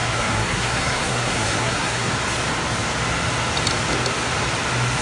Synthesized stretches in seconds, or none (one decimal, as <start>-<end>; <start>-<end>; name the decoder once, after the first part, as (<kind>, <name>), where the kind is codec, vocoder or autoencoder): 0.0-2.1 (codec, SNAC)